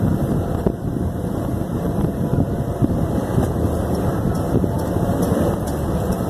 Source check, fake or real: fake